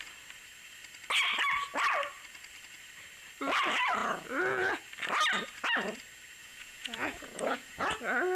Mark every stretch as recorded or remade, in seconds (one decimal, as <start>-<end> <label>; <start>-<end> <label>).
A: 0.0-4.0 recorded; 4.0-4.7 remade; 4.7-6.4 recorded; 6.4-7.9 remade; 7.9-8.3 recorded